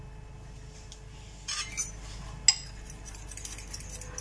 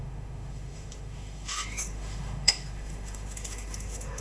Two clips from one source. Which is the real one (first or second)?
first